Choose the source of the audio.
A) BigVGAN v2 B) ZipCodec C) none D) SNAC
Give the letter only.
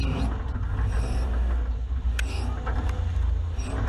C